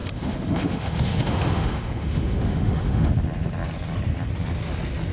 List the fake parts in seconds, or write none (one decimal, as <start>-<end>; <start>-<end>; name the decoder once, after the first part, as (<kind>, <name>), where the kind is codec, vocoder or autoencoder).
0.0-3.1 (autoencoder, DAC-VAE)